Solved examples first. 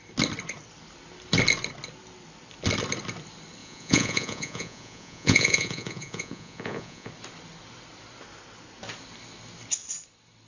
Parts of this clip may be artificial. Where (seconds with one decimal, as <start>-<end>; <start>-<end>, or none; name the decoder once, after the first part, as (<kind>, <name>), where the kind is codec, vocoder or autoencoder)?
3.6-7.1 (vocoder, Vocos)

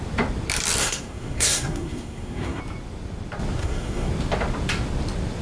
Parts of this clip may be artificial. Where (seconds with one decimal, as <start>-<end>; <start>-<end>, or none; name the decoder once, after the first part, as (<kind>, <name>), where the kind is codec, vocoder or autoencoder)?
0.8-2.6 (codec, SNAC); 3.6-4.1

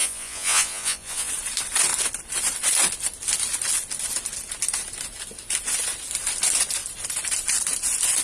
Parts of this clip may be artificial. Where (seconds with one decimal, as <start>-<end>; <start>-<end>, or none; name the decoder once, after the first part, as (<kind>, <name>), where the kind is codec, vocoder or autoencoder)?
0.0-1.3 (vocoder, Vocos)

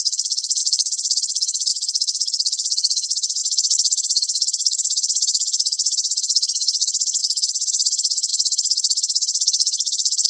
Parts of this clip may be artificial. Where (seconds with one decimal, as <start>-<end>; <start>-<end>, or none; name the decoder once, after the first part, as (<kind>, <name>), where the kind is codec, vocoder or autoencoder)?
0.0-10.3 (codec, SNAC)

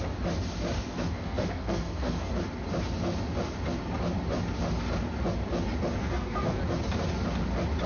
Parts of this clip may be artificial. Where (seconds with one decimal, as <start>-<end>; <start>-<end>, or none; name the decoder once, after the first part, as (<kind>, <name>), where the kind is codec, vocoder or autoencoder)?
0.9-2.3 (codec, SNAC); 6.0-6.6